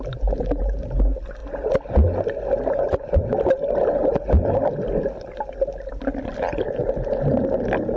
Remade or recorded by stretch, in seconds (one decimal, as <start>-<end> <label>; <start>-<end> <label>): 0.0-8.0 recorded